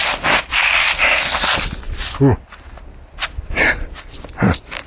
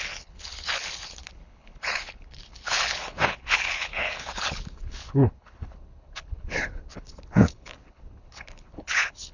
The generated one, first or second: second